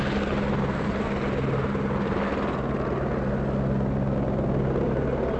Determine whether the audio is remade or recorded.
recorded